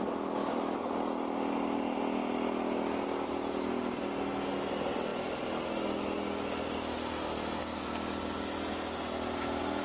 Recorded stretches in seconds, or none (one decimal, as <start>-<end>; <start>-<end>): 0.0-9.8